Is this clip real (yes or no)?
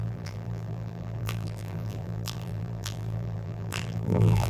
no